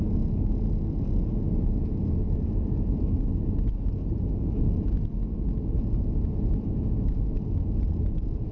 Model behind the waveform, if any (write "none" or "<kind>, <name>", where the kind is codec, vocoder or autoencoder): vocoder, Vocos